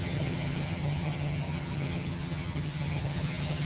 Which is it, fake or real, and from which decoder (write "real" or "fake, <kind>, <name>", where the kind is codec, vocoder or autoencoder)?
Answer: fake, vocoder, HiFi-GAN